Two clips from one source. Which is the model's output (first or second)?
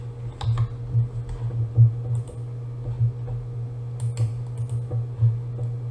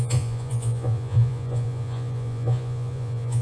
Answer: second